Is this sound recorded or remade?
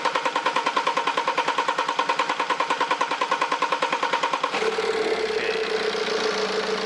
recorded